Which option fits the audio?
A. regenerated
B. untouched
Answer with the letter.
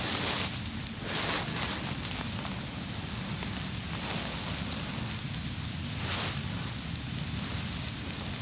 B